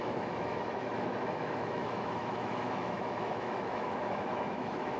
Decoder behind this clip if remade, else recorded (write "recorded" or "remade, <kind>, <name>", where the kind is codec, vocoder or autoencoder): remade, autoencoder, DAC-VAE